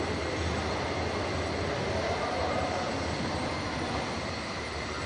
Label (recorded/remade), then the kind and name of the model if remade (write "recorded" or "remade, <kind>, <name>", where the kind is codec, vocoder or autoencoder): recorded